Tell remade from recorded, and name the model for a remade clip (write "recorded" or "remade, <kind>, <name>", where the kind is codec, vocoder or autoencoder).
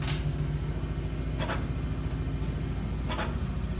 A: recorded